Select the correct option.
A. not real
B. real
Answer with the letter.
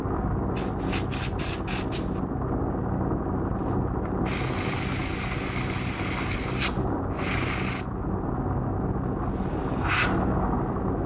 B